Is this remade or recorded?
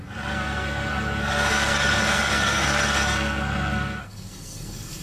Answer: remade